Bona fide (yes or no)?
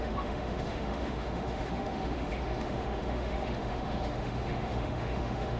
no